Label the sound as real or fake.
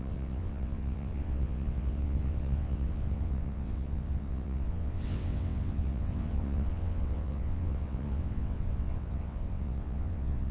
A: fake